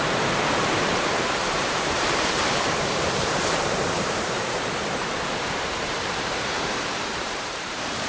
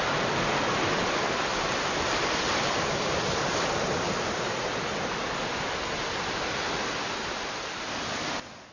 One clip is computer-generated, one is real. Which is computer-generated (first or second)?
first